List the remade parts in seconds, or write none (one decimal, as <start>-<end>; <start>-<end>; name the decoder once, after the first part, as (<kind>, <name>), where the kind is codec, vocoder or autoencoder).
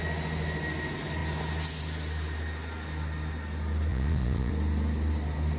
3.9-4.5 (vocoder, Vocos)